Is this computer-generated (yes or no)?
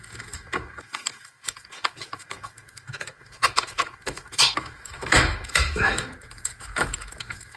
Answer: yes